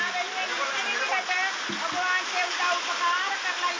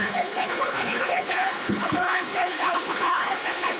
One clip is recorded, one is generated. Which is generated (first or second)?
second